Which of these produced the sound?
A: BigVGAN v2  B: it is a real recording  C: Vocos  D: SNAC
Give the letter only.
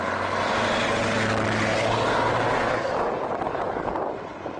B